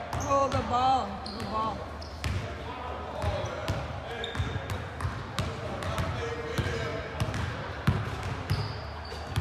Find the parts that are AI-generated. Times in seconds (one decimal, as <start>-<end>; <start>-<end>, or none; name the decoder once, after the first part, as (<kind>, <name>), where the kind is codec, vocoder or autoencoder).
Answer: 0.4-2.4 (vocoder, BigVGAN v2)